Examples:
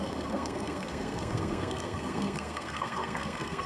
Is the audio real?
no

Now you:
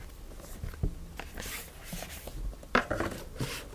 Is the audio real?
yes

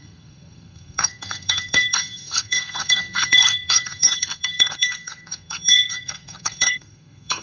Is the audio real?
no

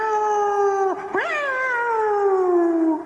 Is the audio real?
yes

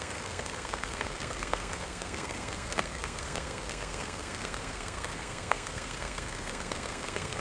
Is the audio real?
no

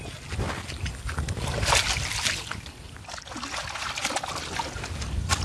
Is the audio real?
yes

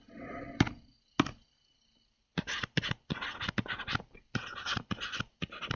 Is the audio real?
yes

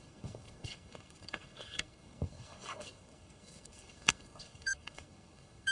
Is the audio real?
no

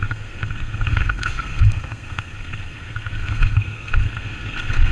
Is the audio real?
no